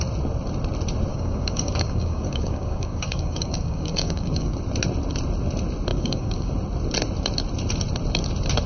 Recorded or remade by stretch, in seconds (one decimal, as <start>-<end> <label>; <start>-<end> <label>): 0.0-1.1 recorded; 1.1-4.6 remade; 4.6-5.9 recorded; 5.9-6.5 remade; 6.5-8.7 recorded